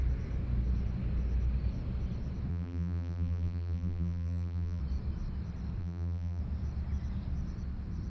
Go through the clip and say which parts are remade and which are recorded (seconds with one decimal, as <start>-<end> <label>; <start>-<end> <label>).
0.0-2.5 recorded; 2.5-4.8 remade; 4.8-5.8 recorded; 5.8-6.4 remade; 6.4-8.1 recorded